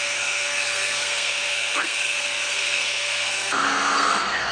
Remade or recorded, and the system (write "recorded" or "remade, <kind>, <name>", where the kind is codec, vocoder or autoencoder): remade, codec, SNAC